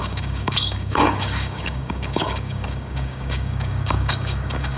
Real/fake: fake